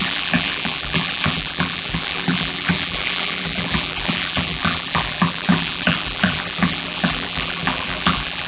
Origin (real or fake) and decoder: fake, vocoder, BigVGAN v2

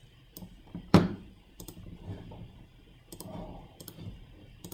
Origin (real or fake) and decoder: fake, vocoder, BigVGAN v2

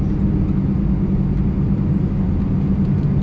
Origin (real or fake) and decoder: real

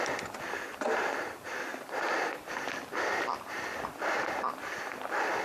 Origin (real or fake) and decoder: real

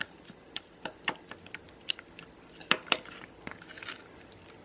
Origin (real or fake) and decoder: real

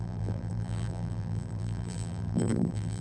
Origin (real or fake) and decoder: fake, vocoder, BigVGAN v2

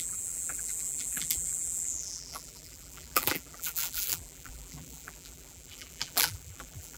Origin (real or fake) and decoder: fake, vocoder, BigVGAN v2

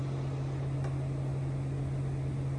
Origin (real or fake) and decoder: real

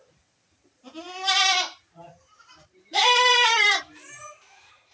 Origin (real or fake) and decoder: fake, vocoder, BigVGAN v2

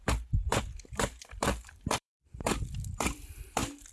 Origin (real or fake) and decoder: fake, vocoder, BigVGAN v2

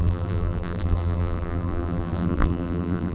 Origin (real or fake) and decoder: fake, vocoder, BigVGAN v2